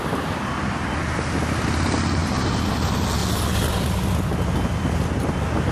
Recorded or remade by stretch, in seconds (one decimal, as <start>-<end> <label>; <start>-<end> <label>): 0.0-5.7 recorded